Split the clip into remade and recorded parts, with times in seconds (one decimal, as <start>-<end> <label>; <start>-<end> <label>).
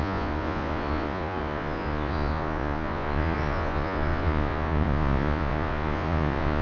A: 0.0-6.6 remade